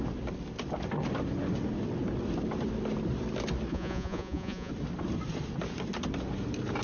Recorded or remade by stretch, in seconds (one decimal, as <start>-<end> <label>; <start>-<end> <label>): 0.0-3.7 recorded; 3.7-4.7 remade; 4.7-6.8 recorded

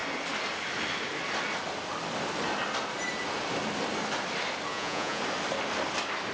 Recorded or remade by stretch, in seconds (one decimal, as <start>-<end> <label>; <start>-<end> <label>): 0.0-4.7 recorded; 4.7-5.2 remade; 5.2-6.3 recorded